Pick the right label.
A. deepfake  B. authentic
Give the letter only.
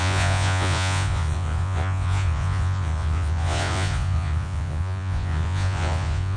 A